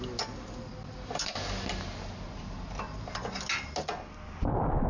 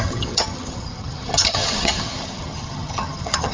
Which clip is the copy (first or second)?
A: second